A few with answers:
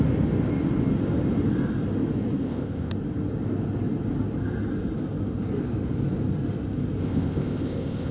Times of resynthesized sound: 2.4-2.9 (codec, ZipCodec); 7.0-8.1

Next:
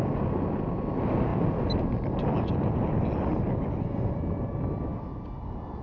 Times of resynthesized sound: none